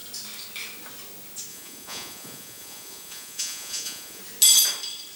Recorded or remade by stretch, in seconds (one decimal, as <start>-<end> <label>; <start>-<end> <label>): 0.0-1.5 recorded; 1.5-4.2 remade; 4.2-5.2 recorded